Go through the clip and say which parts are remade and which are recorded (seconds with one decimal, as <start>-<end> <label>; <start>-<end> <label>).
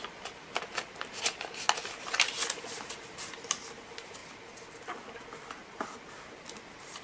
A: 0.0-7.0 recorded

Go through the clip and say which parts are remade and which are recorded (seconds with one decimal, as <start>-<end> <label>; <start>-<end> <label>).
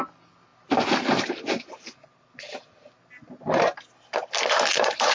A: 0.0-5.1 recorded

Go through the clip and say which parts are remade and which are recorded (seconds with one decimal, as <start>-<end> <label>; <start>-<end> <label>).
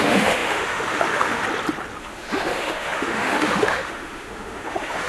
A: 0.0-1.4 remade; 1.4-2.0 recorded; 2.0-5.1 remade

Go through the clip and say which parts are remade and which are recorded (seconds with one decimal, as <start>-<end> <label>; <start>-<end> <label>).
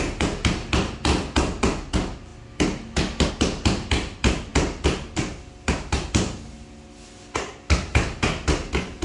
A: 0.0-9.0 recorded